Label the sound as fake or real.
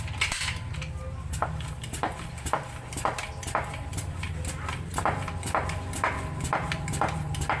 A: real